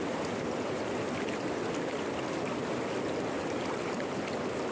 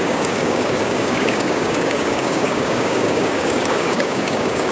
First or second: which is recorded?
first